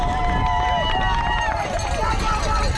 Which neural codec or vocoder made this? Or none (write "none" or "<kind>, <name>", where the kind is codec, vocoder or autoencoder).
none